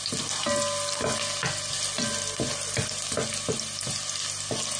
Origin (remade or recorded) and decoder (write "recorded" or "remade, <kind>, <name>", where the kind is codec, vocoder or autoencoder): recorded